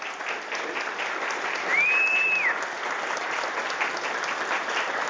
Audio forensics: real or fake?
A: real